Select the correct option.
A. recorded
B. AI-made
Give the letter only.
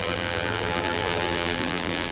B